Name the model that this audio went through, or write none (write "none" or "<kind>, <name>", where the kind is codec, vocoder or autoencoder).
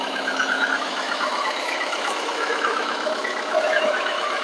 autoencoder, DAC-VAE